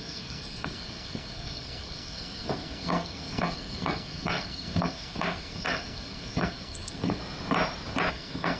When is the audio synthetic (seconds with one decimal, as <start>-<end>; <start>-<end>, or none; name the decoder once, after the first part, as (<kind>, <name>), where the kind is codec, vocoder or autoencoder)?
0.0-7.2 (codec, SNAC); 8.1-8.6